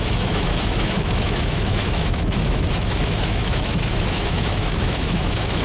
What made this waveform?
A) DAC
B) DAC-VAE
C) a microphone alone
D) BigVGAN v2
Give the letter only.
B